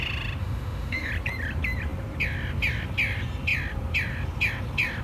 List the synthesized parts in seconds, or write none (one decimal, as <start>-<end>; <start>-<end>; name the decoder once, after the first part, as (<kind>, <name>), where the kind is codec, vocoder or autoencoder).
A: 0.4-1.1 (autoencoder, DAC-VAE)